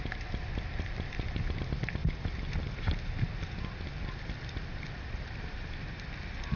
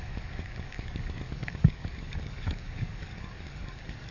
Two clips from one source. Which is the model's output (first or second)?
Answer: second